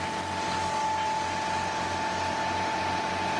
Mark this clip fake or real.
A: real